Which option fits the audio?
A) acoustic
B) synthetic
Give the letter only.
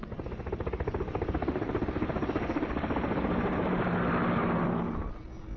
A